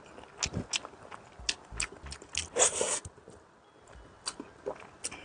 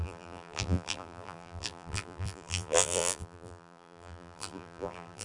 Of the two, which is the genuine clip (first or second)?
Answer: first